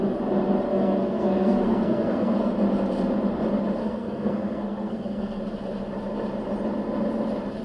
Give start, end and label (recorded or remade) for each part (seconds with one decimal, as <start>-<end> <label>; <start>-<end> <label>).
0.0-0.7 recorded; 0.7-2.5 remade; 2.5-3.8 recorded; 3.8-5.4 remade; 5.4-7.6 recorded